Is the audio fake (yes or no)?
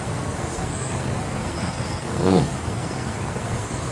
yes